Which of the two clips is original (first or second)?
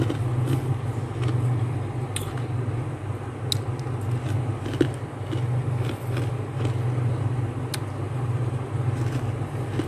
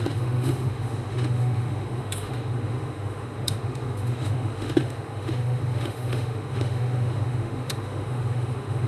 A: first